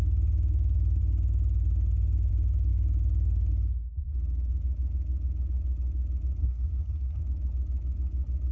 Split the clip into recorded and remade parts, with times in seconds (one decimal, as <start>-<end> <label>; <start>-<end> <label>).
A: 0.0-6.4 recorded; 6.4-7.2 remade; 7.2-8.5 recorded